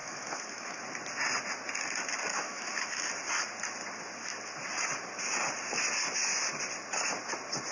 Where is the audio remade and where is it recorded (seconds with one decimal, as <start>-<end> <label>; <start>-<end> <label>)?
0.0-0.8 remade; 0.8-2.3 recorded; 2.3-3.1 remade; 3.1-7.7 recorded